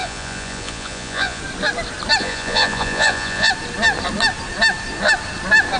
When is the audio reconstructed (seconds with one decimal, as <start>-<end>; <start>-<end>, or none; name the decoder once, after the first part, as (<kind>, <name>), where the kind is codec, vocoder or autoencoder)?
0.0-1.4 (vocoder, Vocos); 2.2-3.5

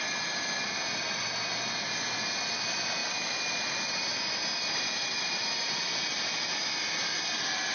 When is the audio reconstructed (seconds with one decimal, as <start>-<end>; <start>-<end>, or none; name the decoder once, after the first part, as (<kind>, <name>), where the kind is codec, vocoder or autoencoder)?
none